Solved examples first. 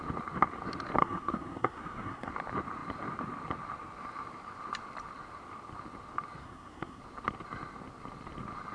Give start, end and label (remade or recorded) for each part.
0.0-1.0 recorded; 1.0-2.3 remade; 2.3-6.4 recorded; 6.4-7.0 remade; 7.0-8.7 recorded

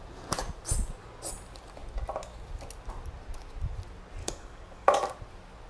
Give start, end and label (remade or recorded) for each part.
0.0-4.2 recorded; 4.2-5.1 remade; 5.1-5.7 recorded

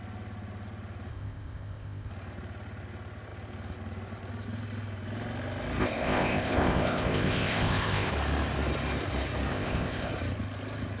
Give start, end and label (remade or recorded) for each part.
0.0-1.1 recorded; 1.1-2.1 remade; 2.1-5.8 recorded; 5.8-8.1 remade; 8.1-9.5 recorded; 9.5-10.1 remade; 10.1-11.0 recorded